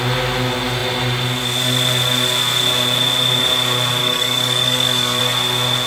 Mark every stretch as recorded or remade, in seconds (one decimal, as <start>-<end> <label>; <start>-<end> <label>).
0.0-4.0 recorded; 4.0-5.2 remade; 5.2-5.9 recorded